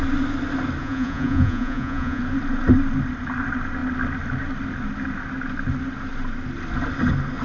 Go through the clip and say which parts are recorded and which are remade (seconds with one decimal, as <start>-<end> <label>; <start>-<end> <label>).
0.0-0.8 recorded; 0.8-2.2 remade; 2.2-7.4 recorded

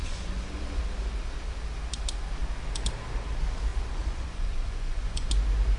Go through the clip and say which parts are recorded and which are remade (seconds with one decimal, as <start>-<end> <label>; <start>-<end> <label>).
0.0-0.8 remade; 0.8-3.7 recorded; 3.7-5.3 remade; 5.3-5.8 recorded